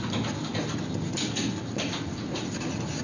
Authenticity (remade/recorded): recorded